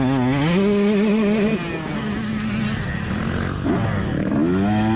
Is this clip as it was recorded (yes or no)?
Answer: yes